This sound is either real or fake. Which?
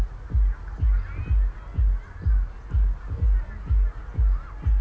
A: real